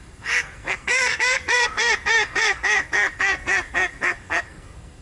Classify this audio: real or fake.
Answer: fake